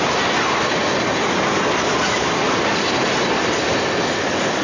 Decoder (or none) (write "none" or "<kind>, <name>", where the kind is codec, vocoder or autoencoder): none